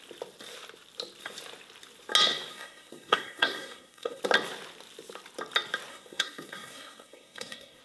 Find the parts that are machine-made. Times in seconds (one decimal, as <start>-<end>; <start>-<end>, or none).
2.5-4.2; 5.9-7.8